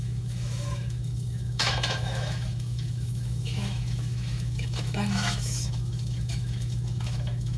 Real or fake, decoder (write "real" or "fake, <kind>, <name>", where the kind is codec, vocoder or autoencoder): fake, autoencoder, DAC-VAE